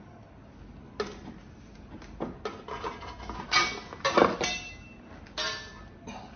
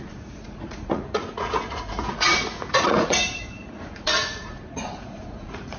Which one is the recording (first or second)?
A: first